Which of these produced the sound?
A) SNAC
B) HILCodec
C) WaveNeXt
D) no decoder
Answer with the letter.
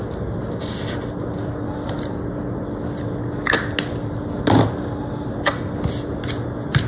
D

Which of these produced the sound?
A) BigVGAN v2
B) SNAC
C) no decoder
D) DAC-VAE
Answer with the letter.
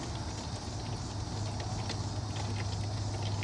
C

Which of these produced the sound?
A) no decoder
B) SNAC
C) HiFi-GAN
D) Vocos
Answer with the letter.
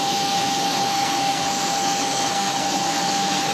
B